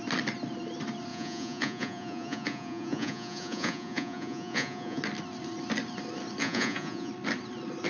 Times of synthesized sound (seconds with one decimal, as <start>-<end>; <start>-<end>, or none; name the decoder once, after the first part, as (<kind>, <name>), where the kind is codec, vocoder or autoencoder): 1.1-5.0 (vocoder, Vocos); 6.4-7.1

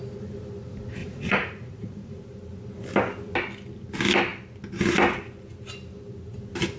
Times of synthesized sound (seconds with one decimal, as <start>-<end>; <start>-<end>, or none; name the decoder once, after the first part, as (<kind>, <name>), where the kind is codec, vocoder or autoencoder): 1.0-2.2 (vocoder, Vocos)

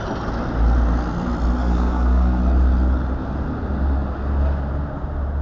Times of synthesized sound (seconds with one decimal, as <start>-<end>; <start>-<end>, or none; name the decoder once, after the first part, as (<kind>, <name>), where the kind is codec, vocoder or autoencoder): 1.6-2.4 (codec, SNAC)

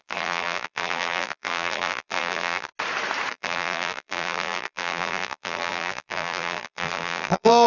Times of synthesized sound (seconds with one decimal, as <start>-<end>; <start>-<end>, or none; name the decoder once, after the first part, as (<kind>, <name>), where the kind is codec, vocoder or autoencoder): 0.0-2.7 (vocoder, BigVGAN v2); 3.3-7.7